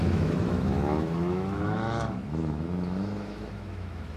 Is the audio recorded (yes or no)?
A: no